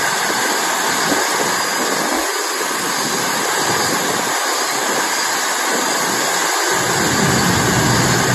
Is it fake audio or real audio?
real